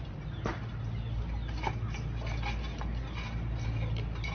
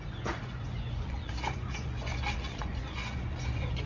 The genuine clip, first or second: first